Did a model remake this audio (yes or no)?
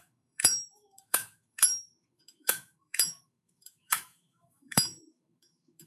yes